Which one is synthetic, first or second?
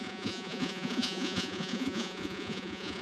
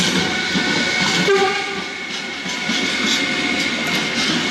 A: first